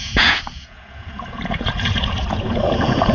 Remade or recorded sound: remade